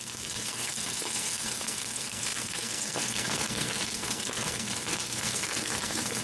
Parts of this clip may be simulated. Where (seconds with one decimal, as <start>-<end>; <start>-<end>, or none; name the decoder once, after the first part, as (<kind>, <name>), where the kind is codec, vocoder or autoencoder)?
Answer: 0.0-6.2 (codec, SNAC)

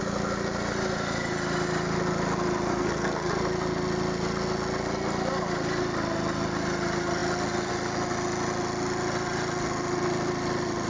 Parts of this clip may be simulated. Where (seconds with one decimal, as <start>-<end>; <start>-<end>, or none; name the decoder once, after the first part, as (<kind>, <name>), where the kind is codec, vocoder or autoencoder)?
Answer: 2.7-3.3 (codec, SNAC)